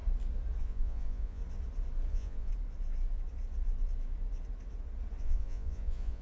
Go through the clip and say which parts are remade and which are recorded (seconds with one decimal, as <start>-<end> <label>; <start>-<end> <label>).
0.0-0.6 recorded; 0.6-1.4 remade; 1.4-2.1 recorded; 2.1-2.5 remade; 2.5-5.2 recorded; 5.2-6.2 remade